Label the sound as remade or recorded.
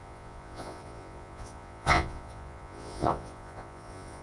remade